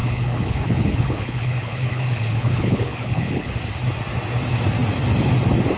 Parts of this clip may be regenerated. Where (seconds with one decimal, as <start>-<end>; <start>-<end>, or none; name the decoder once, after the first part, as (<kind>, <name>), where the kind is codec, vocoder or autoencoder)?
0.0-3.5 (codec, HILCodec)